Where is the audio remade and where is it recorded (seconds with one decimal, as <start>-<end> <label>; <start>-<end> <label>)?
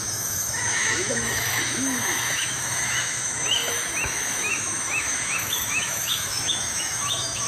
0.0-7.5 remade